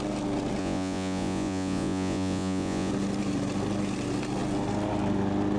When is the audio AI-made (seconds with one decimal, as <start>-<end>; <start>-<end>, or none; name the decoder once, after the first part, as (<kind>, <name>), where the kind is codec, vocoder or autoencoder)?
0.6-2.9 (vocoder, Vocos)